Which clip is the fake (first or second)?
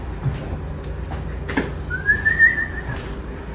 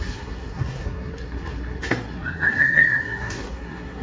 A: second